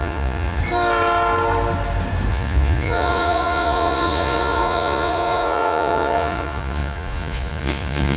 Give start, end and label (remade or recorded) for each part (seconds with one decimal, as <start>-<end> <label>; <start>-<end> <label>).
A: 0.0-0.6 remade; 0.6-2.3 recorded; 2.3-8.2 remade